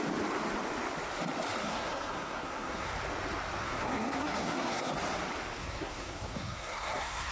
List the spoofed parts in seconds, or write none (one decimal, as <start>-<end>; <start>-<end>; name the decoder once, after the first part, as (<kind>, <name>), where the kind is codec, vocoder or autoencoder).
1.6-2.9 (codec, SNAC); 3.6-4.9; 5.6-7.3